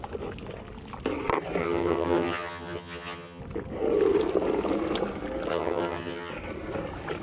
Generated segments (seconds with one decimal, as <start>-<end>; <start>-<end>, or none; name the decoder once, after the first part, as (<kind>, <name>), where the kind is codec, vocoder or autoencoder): 1.6-3.4 (vocoder, HiFi-GAN); 5.5-6.3